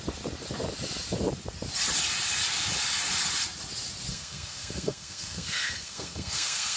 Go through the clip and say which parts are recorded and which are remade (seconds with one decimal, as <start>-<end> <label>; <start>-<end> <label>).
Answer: 0.0-4.1 recorded; 4.1-6.8 remade